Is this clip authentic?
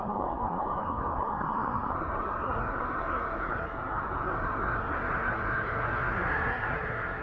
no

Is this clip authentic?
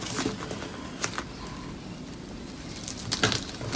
yes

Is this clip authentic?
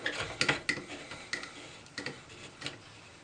yes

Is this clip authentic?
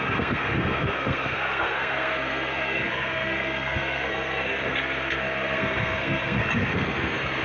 no